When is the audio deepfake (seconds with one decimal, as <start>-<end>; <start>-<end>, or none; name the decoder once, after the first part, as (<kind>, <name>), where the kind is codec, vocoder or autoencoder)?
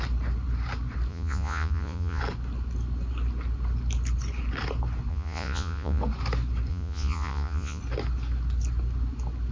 1.1-2.2 (vocoder, Vocos); 5.1-6.0; 6.7-7.8